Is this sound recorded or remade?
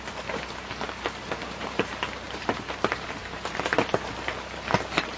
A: recorded